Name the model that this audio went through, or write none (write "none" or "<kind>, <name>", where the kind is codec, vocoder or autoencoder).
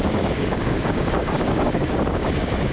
codec, DAC